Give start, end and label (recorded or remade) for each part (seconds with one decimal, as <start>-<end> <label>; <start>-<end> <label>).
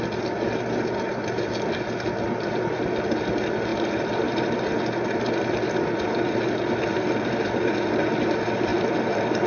0.0-8.7 recorded; 8.7-9.5 remade